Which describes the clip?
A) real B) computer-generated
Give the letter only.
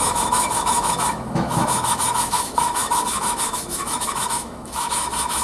B